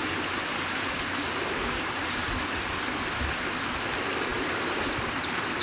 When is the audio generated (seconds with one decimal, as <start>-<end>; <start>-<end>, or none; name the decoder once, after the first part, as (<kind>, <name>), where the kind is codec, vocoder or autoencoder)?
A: 0.0-2.4 (vocoder, BigVGAN v2)